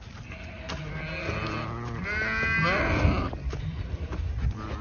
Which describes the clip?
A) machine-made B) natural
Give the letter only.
B